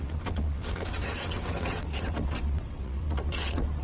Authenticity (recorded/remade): remade